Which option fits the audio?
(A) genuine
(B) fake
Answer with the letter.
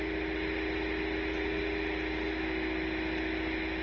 A